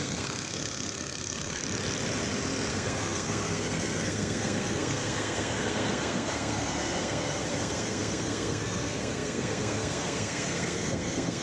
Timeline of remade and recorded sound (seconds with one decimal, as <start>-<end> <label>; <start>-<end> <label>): 0.0-1.6 remade; 1.6-2.7 recorded; 2.7-11.4 remade